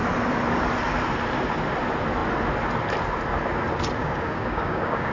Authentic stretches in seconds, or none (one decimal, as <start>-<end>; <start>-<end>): 0.0-4.0